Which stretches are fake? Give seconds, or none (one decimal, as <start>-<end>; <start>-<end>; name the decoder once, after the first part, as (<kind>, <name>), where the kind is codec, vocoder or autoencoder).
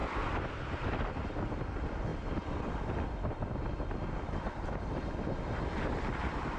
0.0-2.1 (vocoder, BigVGAN v2); 6.1-6.6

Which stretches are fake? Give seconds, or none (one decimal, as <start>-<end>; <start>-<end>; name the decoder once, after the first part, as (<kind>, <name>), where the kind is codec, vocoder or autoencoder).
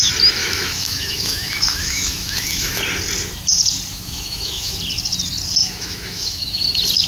0.4-2.8 (autoencoder, DAC-VAE); 3.9-4.8; 5.6-6.6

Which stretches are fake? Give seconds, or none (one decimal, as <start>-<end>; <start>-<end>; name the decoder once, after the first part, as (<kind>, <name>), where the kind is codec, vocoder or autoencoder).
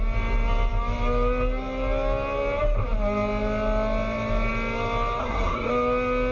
5.2-5.7 (codec, SNAC)